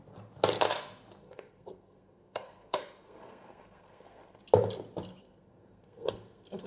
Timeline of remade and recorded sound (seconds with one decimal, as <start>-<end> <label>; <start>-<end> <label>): 0.0-1.2 recorded; 1.2-4.4 remade; 4.4-5.2 recorded; 5.2-6.7 remade